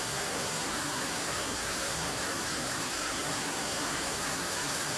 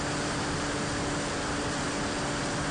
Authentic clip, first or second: second